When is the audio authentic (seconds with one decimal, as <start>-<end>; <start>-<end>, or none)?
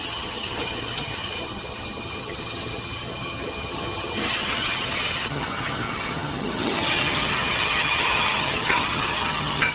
none